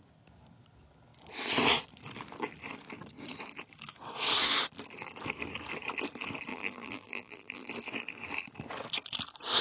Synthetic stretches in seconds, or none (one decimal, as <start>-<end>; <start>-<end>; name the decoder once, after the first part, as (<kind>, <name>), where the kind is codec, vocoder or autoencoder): 6.5-7.7 (vocoder, BigVGAN v2)